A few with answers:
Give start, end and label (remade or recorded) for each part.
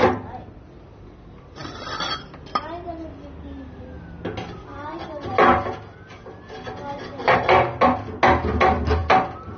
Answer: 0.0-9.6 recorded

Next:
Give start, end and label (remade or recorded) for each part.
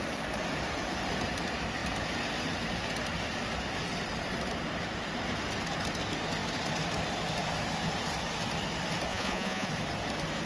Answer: 0.0-9.1 recorded; 9.1-9.7 remade; 9.7-10.5 recorded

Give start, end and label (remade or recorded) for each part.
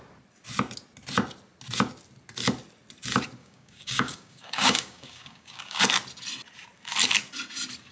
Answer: 0.0-3.4 recorded; 3.4-5.8 remade; 5.8-7.9 recorded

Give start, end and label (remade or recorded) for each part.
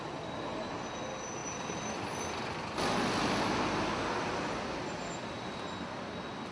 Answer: 0.0-6.5 recorded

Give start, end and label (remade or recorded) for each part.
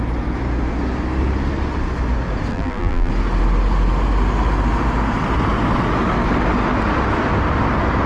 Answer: 0.0-2.5 recorded; 2.5-3.1 remade; 3.1-8.1 recorded